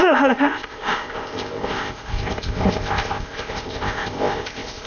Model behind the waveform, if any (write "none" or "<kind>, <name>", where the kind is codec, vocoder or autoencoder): codec, ZipCodec